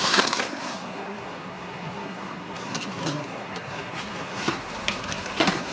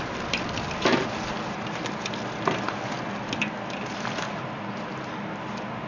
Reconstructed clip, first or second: first